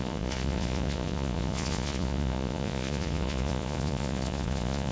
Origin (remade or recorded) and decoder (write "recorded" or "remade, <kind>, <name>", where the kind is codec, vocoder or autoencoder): remade, vocoder, Vocos